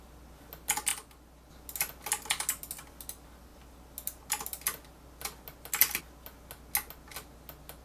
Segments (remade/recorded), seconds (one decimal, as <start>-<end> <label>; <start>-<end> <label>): 0.0-7.8 recorded